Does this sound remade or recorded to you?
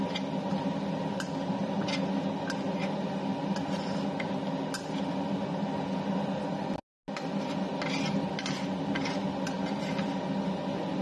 recorded